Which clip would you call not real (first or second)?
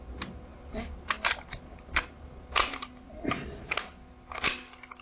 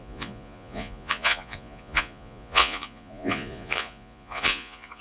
second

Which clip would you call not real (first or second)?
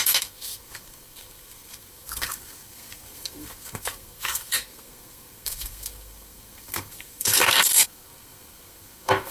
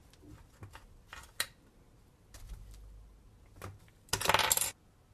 first